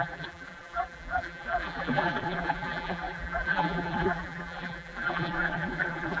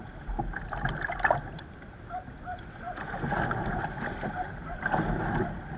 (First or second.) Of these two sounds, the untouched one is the second